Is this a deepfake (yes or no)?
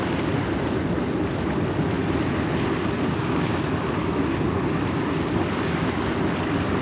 no